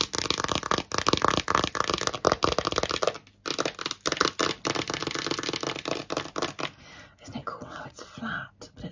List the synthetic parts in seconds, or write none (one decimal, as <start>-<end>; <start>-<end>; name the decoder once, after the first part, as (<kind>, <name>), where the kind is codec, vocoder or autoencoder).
7.4-8.1 (vocoder, WaveNeXt)